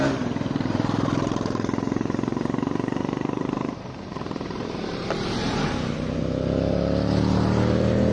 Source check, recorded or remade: remade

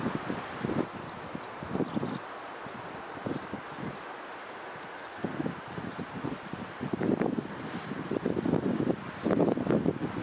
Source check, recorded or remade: recorded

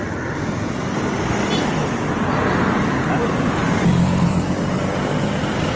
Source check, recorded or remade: recorded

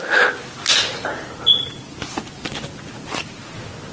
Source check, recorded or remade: recorded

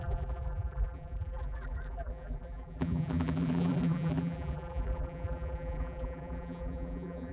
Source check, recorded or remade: remade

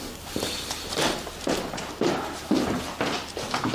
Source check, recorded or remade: recorded